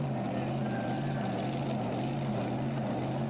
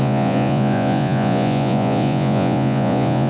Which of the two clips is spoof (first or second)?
second